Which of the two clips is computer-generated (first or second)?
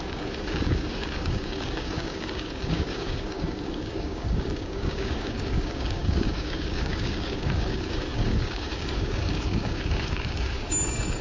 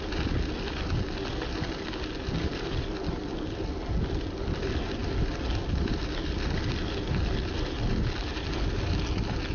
first